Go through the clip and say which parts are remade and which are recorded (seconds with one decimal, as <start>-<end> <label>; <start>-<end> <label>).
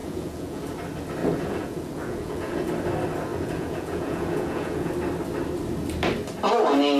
0.0-0.6 remade; 0.6-1.2 recorded; 1.2-2.7 remade; 2.7-3.3 recorded; 3.3-4.9 remade; 4.9-7.0 recorded